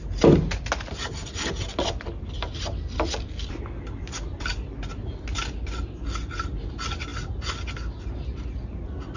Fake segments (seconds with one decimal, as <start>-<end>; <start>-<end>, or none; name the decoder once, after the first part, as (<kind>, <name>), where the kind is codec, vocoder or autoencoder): none